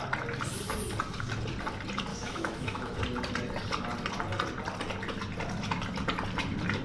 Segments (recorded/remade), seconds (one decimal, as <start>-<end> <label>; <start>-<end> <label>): 0.0-2.1 recorded; 2.1-3.0 remade; 3.0-6.8 recorded